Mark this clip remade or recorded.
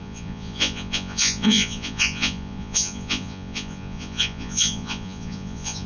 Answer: remade